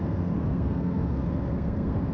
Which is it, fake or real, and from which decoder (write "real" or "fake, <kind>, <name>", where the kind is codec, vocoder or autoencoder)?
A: fake, codec, SNAC